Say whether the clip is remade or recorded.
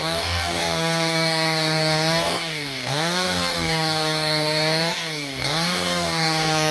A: remade